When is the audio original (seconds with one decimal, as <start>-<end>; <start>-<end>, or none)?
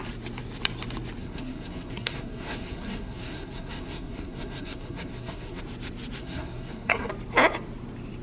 0.0-1.2; 5.6-6.2; 7.1-8.2